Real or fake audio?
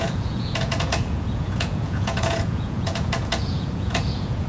fake